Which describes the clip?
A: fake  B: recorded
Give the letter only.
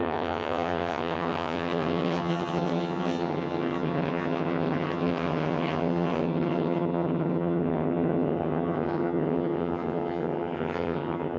A